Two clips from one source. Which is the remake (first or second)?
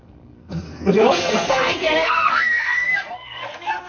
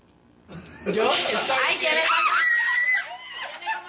first